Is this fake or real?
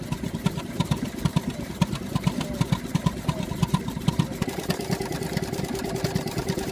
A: fake